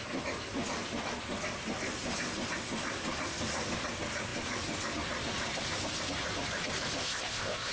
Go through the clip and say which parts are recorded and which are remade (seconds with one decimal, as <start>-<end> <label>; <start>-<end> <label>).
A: 0.0-7.0 recorded; 7.0-7.7 remade